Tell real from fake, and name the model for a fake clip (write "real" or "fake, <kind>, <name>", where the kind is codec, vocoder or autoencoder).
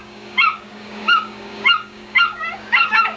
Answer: fake, codec, DAC